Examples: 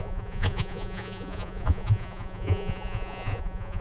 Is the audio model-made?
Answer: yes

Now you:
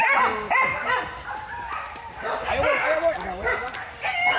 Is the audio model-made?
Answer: no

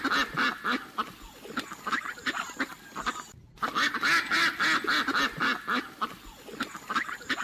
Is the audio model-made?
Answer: no